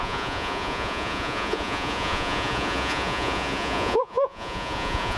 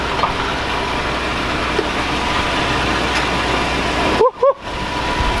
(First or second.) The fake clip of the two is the first